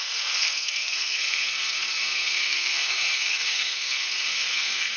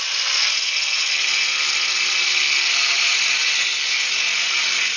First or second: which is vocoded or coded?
first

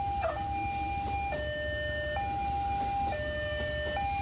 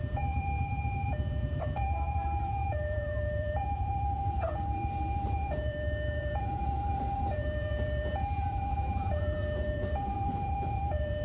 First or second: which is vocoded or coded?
second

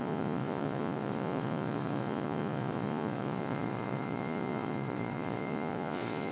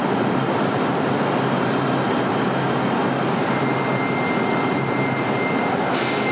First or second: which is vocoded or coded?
first